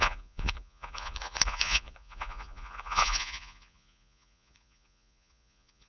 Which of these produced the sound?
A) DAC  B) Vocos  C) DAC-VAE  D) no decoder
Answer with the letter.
B